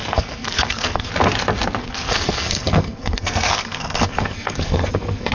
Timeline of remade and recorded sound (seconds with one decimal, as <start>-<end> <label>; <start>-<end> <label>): 0.0-1.1 remade; 1.1-1.8 recorded; 1.8-5.3 remade